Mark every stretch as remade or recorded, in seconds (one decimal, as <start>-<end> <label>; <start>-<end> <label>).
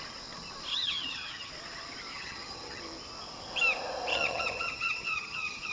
0.0-0.7 recorded; 0.7-1.5 remade; 1.5-2.1 recorded; 2.1-2.8 remade; 2.8-4.1 recorded; 4.1-5.7 remade